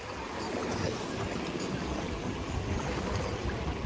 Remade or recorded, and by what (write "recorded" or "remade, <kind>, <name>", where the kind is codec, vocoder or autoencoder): recorded